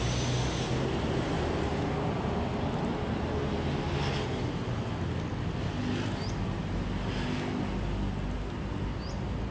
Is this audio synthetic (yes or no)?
no